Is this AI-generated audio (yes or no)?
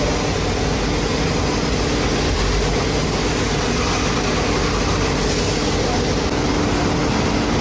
no